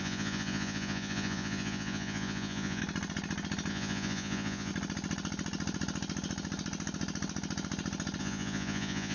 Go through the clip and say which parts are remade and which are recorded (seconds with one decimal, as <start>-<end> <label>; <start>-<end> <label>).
0.0-2.8 remade; 2.8-3.7 recorded; 3.7-4.7 remade; 4.7-8.2 recorded; 8.2-9.1 remade